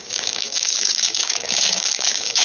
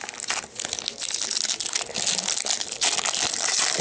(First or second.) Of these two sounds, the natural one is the second